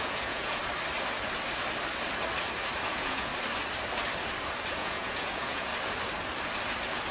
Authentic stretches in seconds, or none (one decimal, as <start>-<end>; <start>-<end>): 0.6-2.9; 3.3-4.7; 5.7-7.1